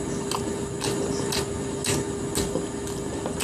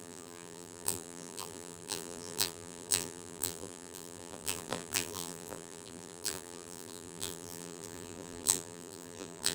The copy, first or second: second